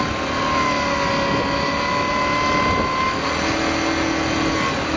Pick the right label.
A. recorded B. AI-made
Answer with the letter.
A